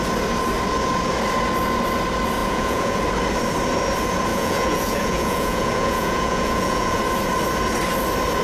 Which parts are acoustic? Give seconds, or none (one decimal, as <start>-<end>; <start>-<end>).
0.0-2.4; 3.0-4.3; 7.0-8.4